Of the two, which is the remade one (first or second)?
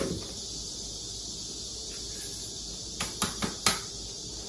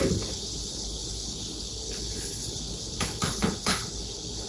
second